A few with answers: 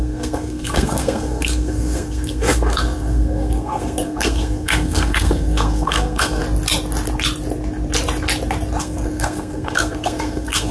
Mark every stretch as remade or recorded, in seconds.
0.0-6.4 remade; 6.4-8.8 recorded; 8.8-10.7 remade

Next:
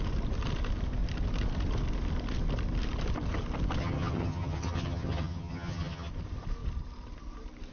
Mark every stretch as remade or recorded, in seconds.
0.0-3.8 recorded; 3.8-6.1 remade; 6.1-7.7 recorded

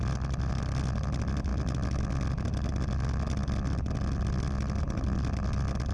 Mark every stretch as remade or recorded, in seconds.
0.0-5.9 recorded

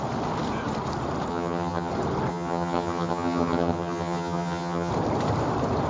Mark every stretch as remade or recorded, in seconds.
0.0-1.3 recorded; 1.3-1.9 remade; 1.9-2.3 recorded; 2.3-4.9 remade; 4.9-5.9 recorded